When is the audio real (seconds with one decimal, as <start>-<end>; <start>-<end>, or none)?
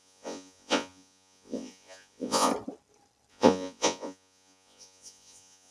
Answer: 2.5-3.3